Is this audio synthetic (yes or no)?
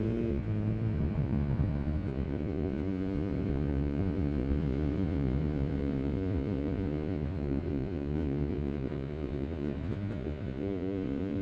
yes